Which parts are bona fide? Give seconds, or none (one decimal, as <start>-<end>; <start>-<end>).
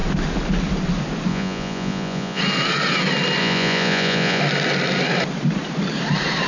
0.0-1.3; 2.4-3.4; 4.4-6.5